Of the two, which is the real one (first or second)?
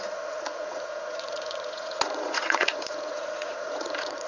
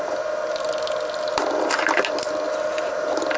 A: second